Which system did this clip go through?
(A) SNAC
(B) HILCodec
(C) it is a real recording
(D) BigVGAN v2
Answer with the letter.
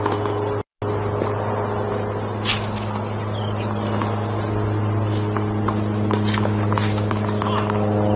C